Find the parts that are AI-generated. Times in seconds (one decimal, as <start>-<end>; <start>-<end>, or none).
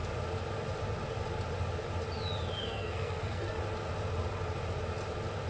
2.6-3.6